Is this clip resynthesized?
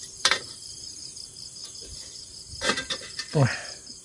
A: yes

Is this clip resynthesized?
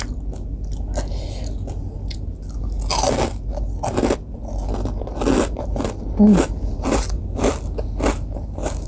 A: no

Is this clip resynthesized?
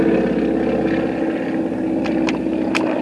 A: no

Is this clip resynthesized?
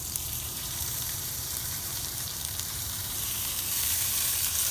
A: yes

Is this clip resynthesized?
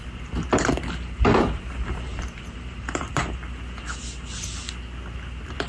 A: yes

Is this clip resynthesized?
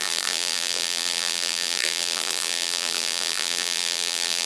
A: yes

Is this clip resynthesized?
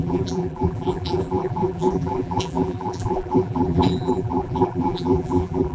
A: yes